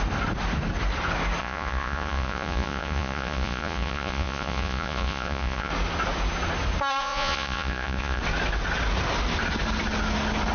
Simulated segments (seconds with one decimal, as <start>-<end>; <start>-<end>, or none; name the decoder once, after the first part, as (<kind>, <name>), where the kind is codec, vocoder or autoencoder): 1.4-5.7 (vocoder, Vocos); 7.0-8.2